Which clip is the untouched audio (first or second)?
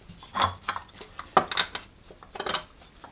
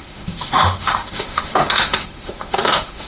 first